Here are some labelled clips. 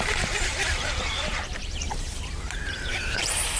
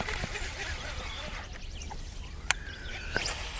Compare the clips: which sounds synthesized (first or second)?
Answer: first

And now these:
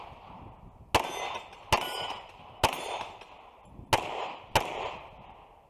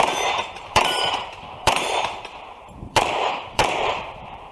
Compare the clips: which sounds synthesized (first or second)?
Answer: second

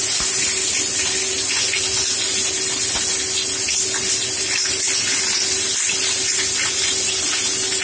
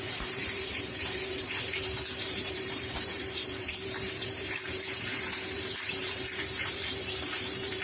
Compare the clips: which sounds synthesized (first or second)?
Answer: second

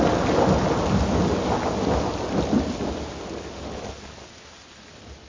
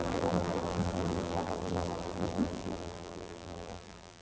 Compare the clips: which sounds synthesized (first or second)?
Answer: second